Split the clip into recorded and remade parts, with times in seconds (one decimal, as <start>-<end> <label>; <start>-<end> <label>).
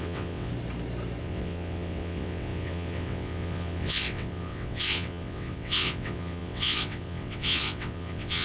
0.0-0.5 remade; 0.5-1.2 recorded; 1.2-8.4 remade